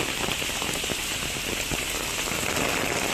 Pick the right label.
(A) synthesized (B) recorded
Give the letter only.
B